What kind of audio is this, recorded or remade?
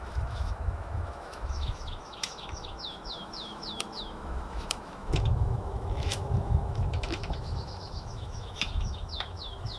remade